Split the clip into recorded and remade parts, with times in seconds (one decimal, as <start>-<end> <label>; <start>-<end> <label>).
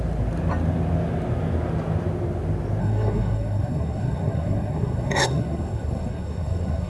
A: 0.0-2.8 recorded; 2.8-6.9 remade